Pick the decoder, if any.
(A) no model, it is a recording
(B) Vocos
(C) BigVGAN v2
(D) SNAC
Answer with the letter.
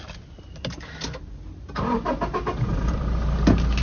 A